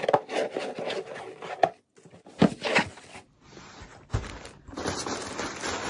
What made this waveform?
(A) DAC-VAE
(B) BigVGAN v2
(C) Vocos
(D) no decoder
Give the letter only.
D